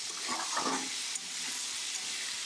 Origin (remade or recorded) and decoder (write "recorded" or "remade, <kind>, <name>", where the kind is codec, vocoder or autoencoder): recorded